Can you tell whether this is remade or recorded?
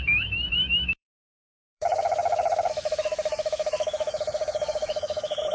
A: remade